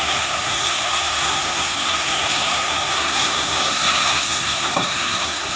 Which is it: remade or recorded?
remade